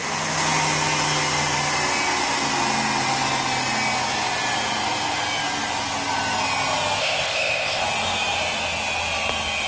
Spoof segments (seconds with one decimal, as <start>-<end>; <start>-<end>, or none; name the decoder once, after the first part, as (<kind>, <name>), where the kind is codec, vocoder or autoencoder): 7.0-7.8 (codec, ZipCodec)